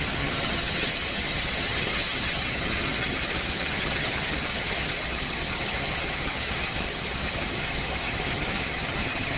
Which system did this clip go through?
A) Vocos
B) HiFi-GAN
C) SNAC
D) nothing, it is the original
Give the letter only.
B